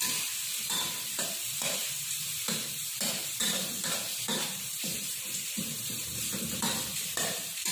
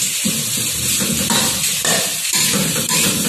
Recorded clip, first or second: second